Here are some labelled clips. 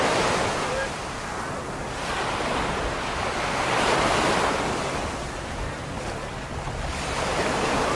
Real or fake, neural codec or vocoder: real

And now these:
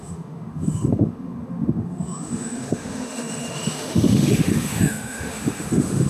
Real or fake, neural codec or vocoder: fake, autoencoder, DAC-VAE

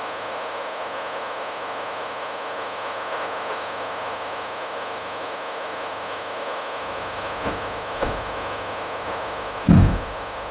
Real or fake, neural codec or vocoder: fake, autoencoder, DAC-VAE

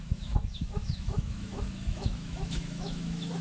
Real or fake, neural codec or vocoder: fake, autoencoder, DAC-VAE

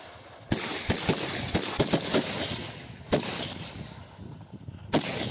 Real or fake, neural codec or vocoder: real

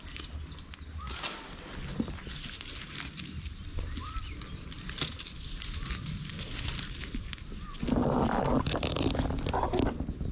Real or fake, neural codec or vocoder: real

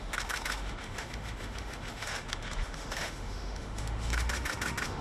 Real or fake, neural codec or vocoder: fake, autoencoder, DAC-VAE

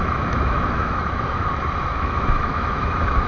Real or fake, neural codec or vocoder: fake, autoencoder, DAC-VAE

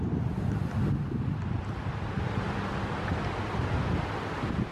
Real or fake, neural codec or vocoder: real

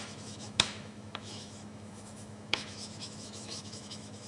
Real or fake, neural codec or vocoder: fake, autoencoder, DAC-VAE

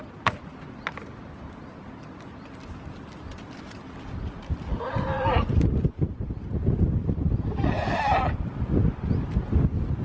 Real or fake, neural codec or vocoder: real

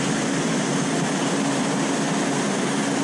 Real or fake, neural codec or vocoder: real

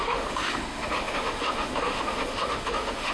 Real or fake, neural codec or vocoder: fake, autoencoder, DAC-VAE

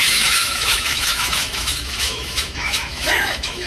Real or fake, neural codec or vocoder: fake, autoencoder, DAC-VAE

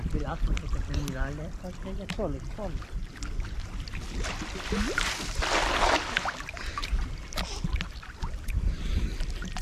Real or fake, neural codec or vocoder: real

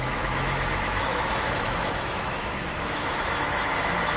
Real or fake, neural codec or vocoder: fake, autoencoder, DAC-VAE